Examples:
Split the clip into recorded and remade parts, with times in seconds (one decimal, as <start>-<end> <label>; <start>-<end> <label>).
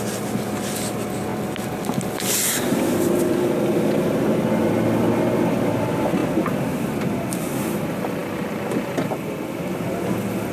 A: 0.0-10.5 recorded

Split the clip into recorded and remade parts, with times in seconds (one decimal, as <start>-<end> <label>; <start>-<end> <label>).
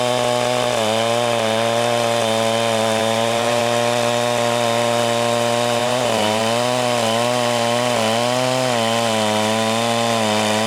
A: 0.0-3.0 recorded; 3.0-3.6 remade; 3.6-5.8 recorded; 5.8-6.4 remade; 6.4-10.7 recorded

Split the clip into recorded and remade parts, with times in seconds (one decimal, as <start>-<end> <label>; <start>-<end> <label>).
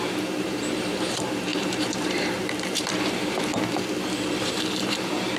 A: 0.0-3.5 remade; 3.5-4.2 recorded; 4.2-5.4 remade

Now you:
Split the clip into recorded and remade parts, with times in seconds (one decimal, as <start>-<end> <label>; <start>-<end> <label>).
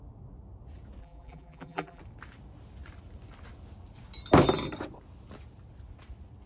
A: 0.0-1.0 recorded; 1.0-2.0 remade; 2.0-6.5 recorded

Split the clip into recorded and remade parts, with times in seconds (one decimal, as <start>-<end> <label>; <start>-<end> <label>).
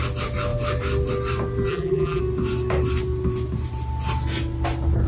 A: 0.0-1.7 recorded; 1.7-2.2 remade; 2.2-5.1 recorded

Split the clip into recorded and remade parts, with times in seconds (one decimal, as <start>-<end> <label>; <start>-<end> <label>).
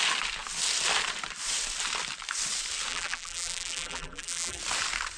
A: 0.0-2.9 recorded; 2.9-4.6 remade; 4.6-5.2 recorded